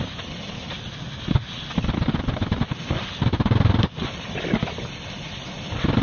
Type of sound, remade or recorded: recorded